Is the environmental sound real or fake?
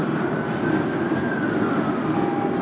real